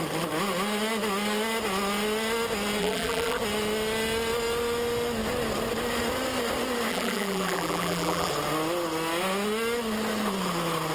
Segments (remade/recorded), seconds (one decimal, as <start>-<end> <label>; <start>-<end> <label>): 0.0-2.8 recorded; 2.8-3.4 remade; 3.4-6.9 recorded; 6.9-8.3 remade; 8.3-10.9 recorded